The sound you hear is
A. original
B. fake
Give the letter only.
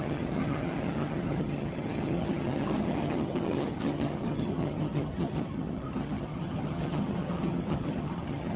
B